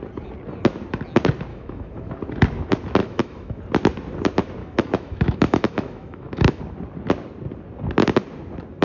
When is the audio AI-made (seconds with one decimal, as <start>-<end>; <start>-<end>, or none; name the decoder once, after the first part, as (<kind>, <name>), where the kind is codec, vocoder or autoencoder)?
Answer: 1.5-2.1 (autoencoder, DAC-VAE); 3.0-3.6; 4.6-6.6